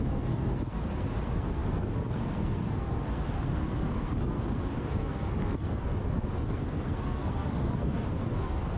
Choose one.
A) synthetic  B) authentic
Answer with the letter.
A